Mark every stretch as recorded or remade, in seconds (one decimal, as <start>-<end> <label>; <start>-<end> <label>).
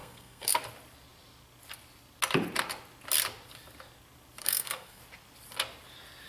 0.0-0.5 remade; 0.5-4.4 recorded; 4.4-5.0 remade; 5.0-6.3 recorded